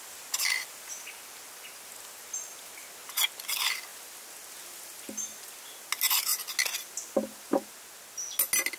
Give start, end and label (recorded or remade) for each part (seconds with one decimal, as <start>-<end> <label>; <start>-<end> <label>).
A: 0.0-8.8 recorded